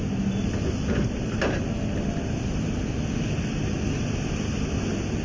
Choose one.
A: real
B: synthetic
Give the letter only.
A